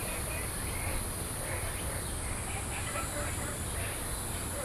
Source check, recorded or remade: recorded